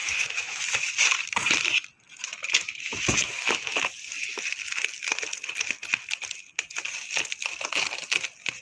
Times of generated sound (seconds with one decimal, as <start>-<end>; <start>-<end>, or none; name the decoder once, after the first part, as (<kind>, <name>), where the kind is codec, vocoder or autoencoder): 0.0-0.6 (autoencoder, DAC-VAE); 2.2-3.8